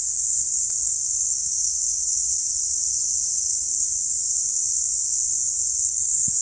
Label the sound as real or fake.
fake